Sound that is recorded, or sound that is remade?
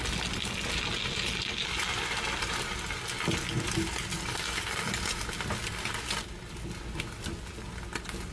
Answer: recorded